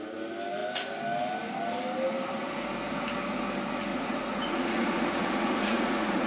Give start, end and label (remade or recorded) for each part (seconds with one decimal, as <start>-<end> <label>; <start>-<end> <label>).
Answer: 0.0-3.9 recorded; 3.9-6.3 remade